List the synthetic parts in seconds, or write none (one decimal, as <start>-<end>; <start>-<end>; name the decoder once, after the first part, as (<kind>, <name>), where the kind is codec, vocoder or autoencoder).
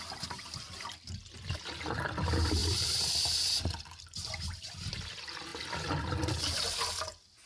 none